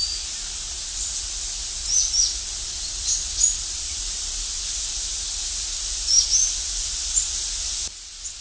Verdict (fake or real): real